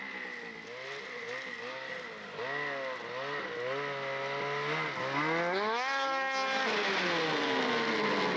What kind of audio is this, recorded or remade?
recorded